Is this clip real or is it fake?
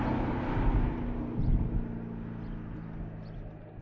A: real